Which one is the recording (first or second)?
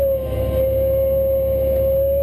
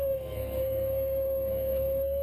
first